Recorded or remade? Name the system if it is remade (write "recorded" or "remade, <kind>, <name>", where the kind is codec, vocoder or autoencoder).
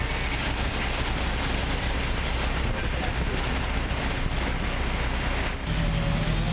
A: recorded